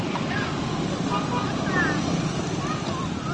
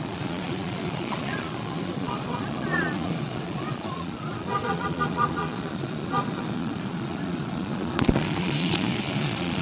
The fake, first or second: second